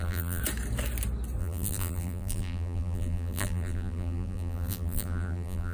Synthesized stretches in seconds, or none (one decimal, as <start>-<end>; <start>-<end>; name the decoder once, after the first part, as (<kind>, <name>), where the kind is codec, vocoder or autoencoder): 0.0-0.4 (vocoder, BigVGAN v2); 1.4-5.7